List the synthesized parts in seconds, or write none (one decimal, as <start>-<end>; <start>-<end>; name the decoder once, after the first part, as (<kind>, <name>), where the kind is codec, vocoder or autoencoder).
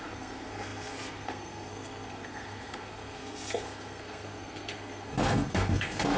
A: 0.0-6.2 (codec, SNAC)